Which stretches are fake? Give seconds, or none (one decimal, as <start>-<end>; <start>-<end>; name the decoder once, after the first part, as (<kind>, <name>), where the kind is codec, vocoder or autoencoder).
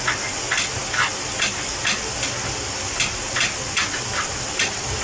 none